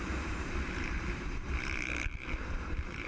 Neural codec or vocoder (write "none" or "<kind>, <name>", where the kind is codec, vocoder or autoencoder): vocoder, BigVGAN v2